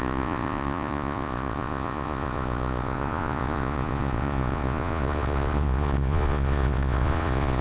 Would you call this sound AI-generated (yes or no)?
yes